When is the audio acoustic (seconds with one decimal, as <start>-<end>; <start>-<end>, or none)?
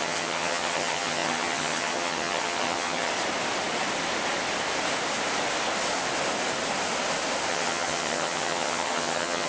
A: 3.1-7.5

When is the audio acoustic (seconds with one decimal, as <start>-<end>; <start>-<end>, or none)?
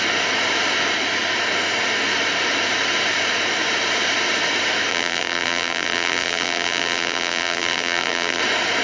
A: 0.0-4.9; 8.4-8.8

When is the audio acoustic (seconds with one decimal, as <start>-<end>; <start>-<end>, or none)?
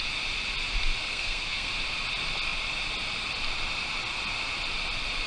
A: 0.0-1.0; 1.7-5.3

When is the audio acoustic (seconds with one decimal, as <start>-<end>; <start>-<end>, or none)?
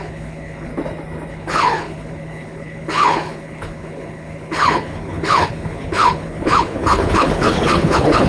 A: 0.7-1.3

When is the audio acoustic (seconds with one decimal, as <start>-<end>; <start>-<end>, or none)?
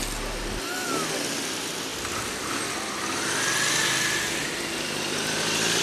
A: 0.0-5.8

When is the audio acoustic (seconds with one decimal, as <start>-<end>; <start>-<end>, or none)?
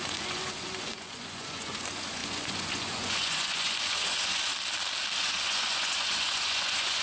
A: 4.5-5.2